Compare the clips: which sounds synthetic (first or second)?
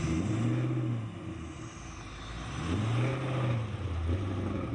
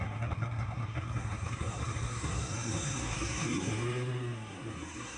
second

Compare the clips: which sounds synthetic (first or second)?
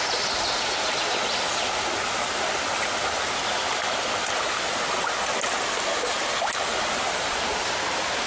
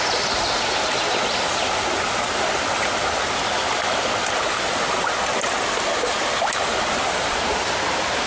second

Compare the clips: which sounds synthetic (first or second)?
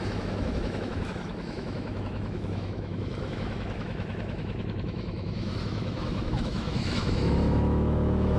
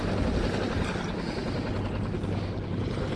first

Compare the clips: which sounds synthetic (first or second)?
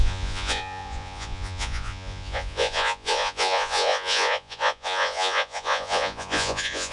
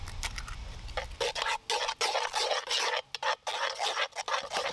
first